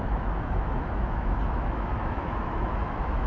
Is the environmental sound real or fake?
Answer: fake